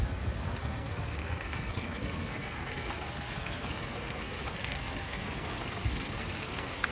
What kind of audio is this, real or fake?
fake